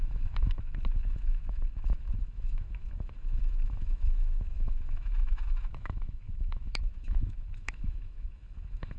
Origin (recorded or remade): remade